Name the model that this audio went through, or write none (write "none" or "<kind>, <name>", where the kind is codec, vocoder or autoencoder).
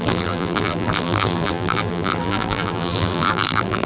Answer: vocoder, BigVGAN v2